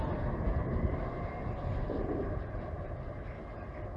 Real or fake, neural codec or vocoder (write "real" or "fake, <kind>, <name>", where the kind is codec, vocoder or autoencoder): real